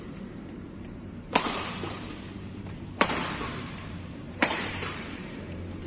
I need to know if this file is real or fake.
fake